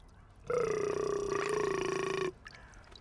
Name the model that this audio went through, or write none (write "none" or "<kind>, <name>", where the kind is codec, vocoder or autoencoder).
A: none